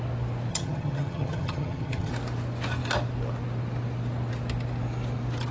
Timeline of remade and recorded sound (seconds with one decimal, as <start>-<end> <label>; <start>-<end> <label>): 0.0-0.5 recorded; 0.5-2.1 remade; 2.1-5.5 recorded